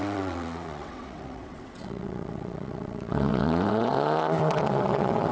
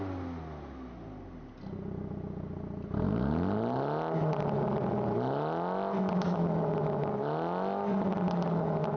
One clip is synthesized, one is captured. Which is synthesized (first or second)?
first